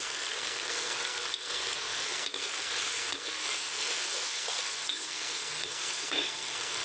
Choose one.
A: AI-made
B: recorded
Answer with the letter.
A